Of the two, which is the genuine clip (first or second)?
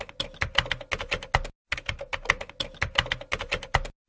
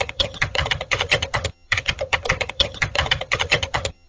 first